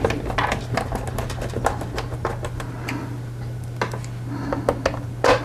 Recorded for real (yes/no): yes